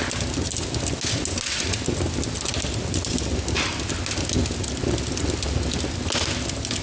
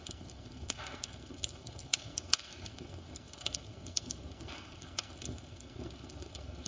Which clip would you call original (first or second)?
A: first